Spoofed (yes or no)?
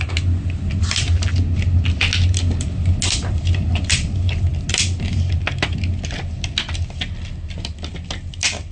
no